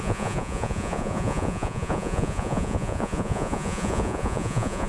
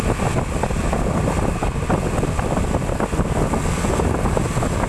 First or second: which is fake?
first